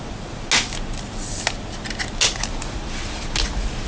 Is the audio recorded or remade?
recorded